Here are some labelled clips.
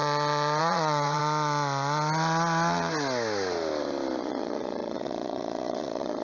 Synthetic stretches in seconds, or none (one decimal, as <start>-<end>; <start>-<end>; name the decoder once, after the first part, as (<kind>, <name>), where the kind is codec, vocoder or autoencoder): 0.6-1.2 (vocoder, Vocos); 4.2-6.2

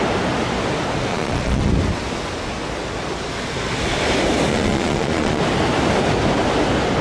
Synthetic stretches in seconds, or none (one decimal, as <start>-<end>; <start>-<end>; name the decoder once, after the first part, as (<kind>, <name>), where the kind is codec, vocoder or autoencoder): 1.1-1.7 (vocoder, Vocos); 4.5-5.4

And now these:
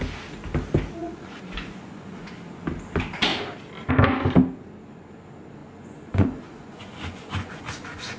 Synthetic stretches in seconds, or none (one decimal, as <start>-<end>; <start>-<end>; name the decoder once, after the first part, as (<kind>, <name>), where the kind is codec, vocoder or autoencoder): 1.0-2.3 (vocoder, Vocos); 5.6-8.2

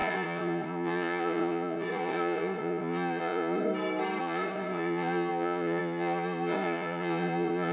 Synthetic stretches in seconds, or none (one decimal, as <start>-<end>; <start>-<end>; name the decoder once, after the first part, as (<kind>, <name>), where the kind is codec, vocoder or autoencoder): 0.0-3.7 (vocoder, Vocos); 4.2-7.7

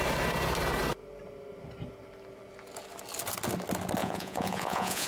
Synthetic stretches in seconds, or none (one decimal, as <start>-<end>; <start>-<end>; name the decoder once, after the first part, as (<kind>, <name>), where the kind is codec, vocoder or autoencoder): 4.0-5.1 (vocoder, Vocos)

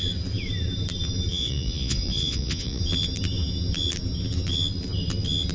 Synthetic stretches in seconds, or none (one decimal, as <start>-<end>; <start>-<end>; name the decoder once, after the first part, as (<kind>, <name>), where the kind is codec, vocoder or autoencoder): 1.3-2.8 (vocoder, Vocos)